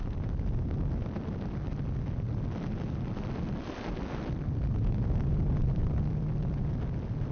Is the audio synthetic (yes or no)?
no